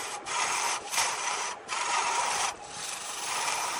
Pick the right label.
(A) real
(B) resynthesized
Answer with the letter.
B